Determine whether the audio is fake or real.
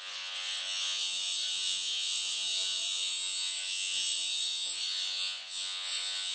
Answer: fake